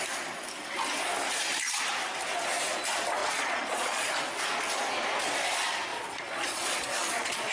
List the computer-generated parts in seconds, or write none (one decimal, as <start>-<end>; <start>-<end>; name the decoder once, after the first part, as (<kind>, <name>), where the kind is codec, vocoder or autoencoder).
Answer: 3.2-4.1 (vocoder, Vocos); 5.9-7.5